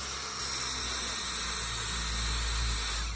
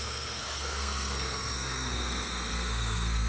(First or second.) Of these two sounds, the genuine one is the first